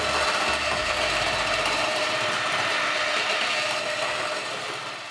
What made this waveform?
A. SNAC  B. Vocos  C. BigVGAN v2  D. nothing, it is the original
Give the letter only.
D